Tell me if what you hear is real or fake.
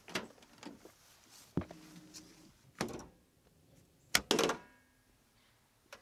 real